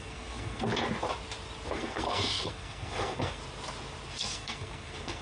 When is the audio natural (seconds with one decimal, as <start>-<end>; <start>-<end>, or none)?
0.7-1.7; 3.4-4.1